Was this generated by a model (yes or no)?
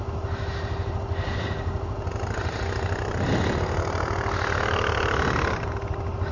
no